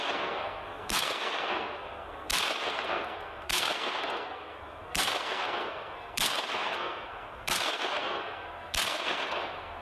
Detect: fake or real fake